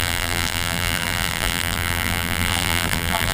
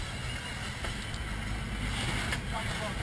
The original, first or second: second